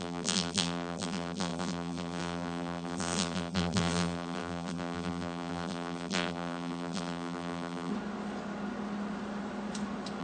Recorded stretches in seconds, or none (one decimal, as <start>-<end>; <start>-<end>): 7.9-10.2